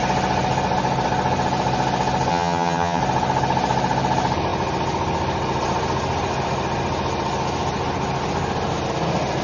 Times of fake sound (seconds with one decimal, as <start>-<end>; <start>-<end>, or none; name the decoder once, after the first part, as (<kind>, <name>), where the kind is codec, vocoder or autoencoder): 2.3-3.0 (vocoder, HiFi-GAN)